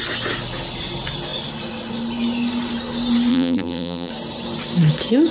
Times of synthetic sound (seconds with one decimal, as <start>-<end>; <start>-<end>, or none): 3.3-4.1